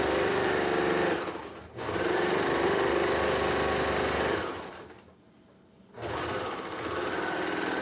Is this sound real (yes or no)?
yes